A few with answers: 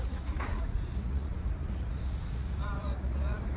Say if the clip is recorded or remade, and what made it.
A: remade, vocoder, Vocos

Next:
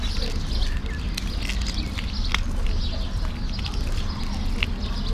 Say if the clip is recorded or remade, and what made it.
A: recorded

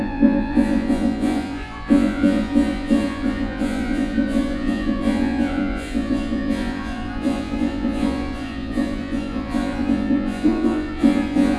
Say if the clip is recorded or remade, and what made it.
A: remade, vocoder, Vocos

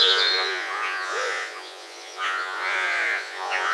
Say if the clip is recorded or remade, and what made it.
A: remade, vocoder, Vocos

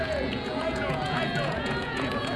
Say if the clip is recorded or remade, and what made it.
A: remade, vocoder, Vocos